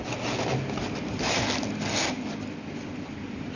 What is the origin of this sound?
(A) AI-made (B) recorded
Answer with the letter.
B